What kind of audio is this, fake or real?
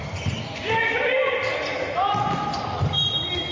real